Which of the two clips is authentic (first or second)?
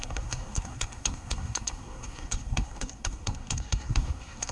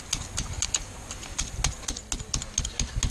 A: second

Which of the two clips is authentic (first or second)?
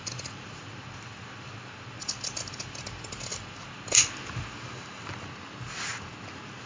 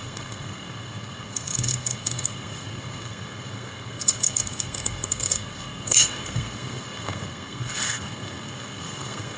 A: first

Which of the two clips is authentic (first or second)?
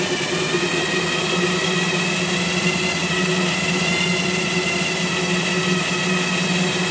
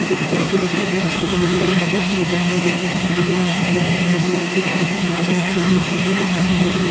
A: first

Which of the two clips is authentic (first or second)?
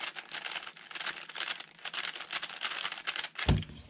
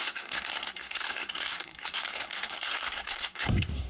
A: first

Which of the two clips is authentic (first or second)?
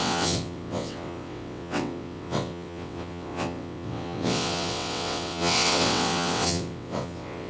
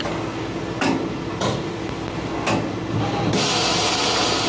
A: second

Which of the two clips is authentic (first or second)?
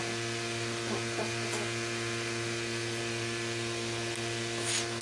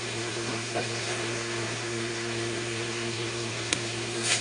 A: first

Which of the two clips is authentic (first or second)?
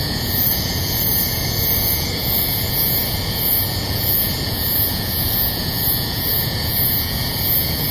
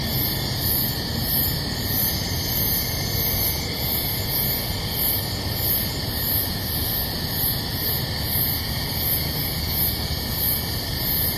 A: second